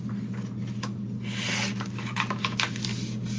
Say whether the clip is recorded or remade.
recorded